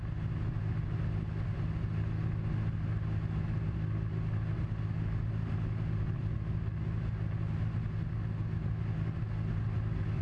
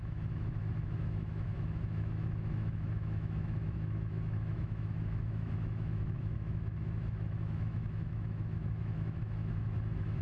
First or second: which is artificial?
second